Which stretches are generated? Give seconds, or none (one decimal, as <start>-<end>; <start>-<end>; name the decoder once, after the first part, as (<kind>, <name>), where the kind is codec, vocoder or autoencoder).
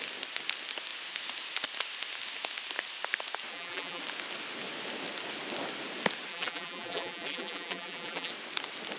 3.5-4.0 (vocoder, BigVGAN v2); 6.3-8.3